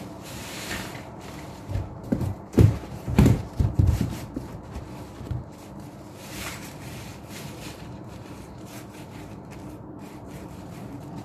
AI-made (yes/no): yes